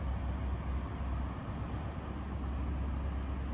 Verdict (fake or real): real